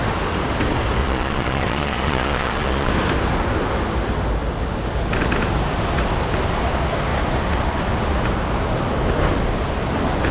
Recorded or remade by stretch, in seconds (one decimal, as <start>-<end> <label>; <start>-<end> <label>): 0.0-1.0 recorded; 1.0-2.9 remade; 2.9-10.3 recorded